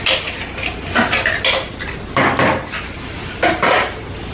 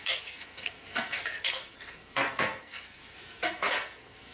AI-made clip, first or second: second